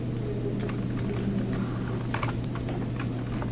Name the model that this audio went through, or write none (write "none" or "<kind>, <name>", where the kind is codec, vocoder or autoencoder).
none